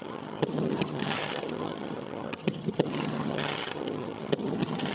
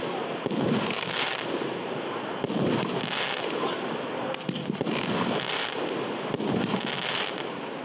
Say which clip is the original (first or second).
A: second